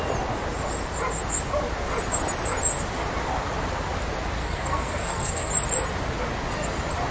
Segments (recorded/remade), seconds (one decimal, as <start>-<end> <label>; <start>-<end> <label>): 0.0-4.4 recorded; 4.4-5.5 remade; 5.5-7.1 recorded